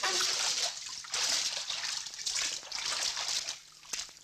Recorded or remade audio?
recorded